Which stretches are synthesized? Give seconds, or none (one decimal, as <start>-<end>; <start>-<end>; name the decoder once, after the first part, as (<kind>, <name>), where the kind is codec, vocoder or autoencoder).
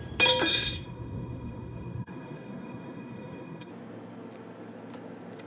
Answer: 0.5-3.7 (codec, SNAC)